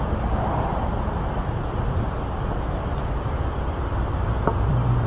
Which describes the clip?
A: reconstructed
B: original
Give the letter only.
B